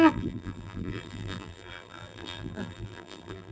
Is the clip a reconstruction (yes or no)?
yes